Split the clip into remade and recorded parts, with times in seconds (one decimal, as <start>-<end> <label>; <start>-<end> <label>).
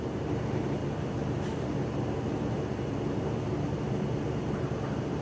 0.0-5.2 remade